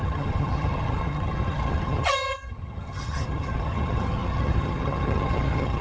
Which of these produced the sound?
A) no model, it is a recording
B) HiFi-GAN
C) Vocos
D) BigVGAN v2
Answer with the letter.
B